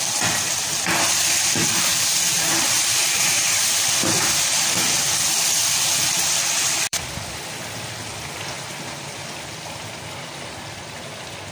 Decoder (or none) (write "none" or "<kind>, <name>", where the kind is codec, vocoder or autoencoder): vocoder, BigVGAN v2